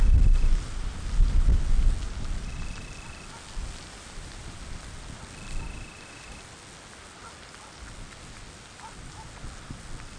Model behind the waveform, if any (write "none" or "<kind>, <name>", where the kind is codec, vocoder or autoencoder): none